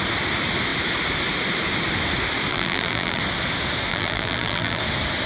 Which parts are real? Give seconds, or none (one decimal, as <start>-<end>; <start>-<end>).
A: 0.0-2.5; 3.2-3.9; 4.8-5.3